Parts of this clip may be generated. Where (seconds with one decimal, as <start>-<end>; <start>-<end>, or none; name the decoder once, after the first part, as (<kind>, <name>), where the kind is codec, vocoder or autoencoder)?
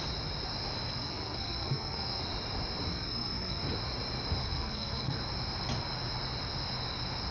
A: 0.9-2.2 (codec, SNAC); 2.9-3.6; 4.4-5.2